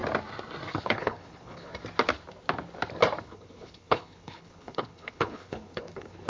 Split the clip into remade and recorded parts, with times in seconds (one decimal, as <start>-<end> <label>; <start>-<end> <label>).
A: 0.0-0.7 recorded; 0.7-1.7 remade; 1.7-3.2 recorded; 3.2-6.3 remade